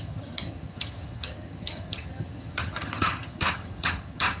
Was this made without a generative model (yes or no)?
no